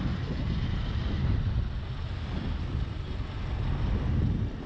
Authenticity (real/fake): real